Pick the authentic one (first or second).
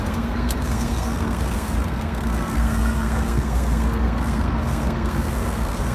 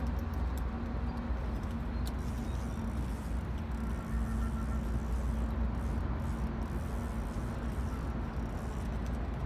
second